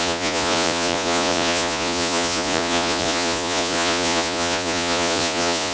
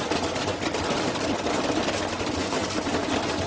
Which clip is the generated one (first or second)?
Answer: first